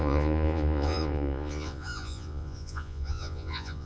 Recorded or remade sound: remade